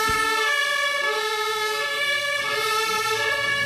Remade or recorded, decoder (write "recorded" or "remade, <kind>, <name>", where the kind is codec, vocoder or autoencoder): remade, codec, SNAC